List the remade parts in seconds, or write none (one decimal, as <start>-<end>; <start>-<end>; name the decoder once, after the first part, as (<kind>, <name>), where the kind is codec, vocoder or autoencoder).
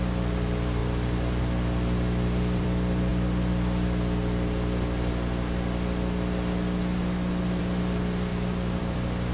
0.0-3.1 (vocoder, BigVGAN v2); 7.6-8.3; 8.8-9.3